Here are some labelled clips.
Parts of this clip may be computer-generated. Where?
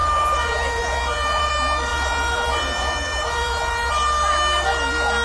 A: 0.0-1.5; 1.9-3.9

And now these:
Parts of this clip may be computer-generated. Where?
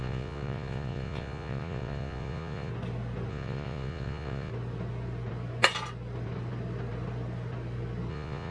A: 0.0-2.7; 3.3-4.5; 8.1-8.5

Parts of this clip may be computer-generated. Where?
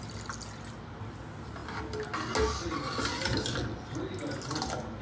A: none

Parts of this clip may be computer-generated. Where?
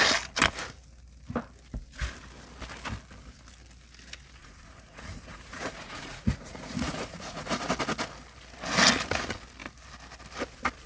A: 4.4-7.7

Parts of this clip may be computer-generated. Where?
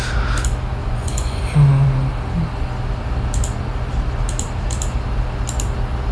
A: 0.8-1.4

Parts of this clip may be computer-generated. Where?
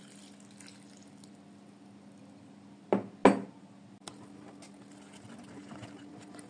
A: none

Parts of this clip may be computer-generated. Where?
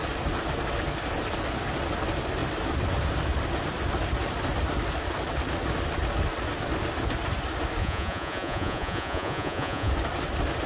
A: 7.8-9.9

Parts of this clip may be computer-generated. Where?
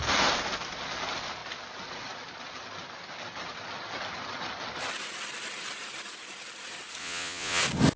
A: 7.0-7.6